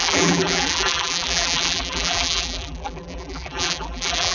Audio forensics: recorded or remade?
remade